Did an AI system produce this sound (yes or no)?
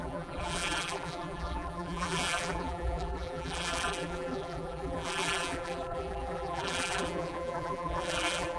yes